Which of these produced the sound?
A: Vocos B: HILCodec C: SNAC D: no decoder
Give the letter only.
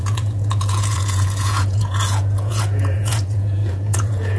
A